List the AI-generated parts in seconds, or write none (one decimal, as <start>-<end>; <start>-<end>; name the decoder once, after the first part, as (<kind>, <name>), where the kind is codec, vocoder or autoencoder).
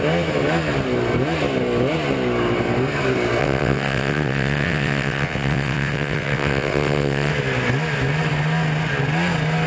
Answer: 3.4-7.3 (vocoder, WaveNeXt)